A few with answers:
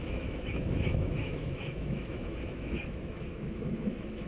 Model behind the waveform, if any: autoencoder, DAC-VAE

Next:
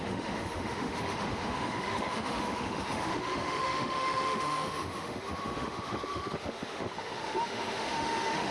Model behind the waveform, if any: autoencoder, DAC-VAE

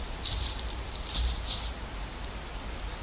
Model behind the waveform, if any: none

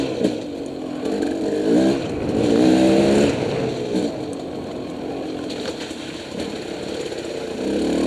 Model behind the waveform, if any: none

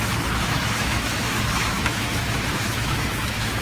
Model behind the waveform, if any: autoencoder, DAC-VAE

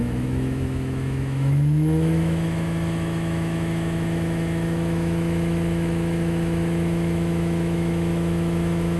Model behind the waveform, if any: autoencoder, DAC-VAE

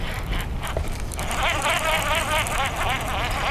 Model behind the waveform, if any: none